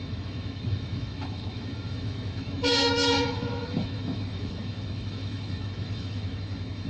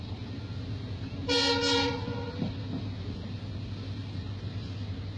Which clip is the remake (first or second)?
first